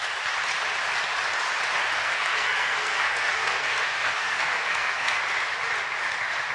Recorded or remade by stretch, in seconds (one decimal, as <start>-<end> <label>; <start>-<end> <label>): 0.0-2.0 recorded; 2.0-5.2 remade; 5.2-6.5 recorded